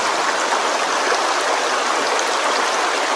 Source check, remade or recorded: recorded